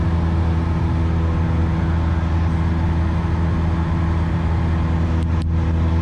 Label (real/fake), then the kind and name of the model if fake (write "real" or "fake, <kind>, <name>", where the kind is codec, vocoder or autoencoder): real